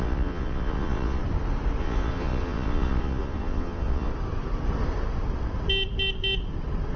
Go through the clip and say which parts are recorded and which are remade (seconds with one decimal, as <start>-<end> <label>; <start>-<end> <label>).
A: 0.0-1.2 remade; 1.2-1.8 recorded; 1.8-4.1 remade; 4.1-7.0 recorded